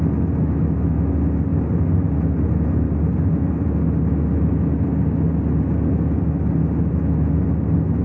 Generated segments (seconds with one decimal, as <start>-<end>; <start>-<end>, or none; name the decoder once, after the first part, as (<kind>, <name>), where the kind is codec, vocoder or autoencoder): none